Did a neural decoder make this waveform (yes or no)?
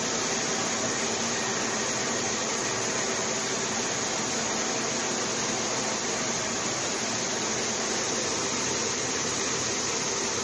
no